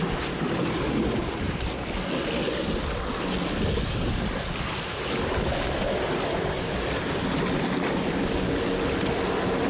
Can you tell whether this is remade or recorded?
recorded